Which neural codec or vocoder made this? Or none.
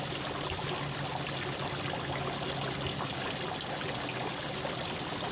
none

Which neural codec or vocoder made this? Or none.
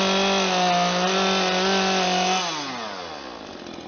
none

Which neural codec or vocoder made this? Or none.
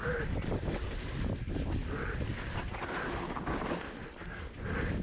none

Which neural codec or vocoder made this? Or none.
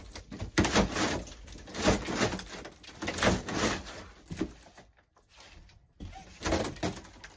none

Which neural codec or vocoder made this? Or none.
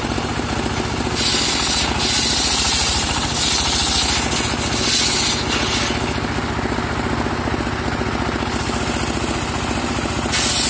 none